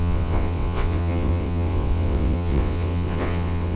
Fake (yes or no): yes